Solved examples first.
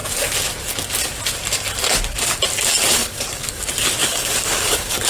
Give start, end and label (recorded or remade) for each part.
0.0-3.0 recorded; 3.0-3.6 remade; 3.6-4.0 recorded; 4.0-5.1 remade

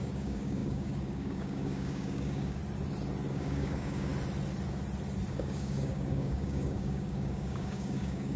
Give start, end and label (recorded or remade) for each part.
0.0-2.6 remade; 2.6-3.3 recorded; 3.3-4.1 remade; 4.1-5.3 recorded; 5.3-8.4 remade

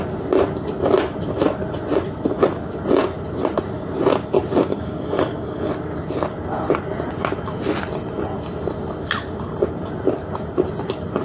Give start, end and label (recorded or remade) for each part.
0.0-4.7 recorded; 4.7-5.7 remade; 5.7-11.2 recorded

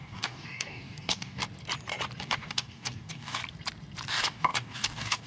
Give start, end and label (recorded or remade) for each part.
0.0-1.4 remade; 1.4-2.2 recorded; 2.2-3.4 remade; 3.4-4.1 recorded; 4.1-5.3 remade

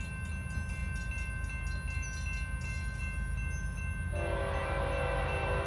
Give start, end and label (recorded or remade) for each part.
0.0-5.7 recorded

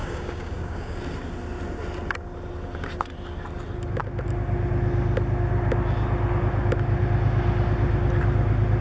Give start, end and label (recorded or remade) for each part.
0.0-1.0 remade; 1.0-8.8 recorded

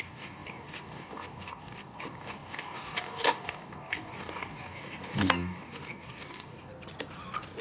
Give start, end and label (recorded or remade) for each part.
0.0-6.7 remade; 6.7-7.6 recorded